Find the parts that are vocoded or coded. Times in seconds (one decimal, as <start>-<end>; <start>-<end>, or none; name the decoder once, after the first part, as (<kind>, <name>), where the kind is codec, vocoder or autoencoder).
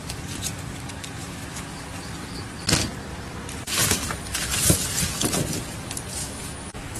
1.2-1.8 (autoencoder, DAC-VAE); 6.2-7.0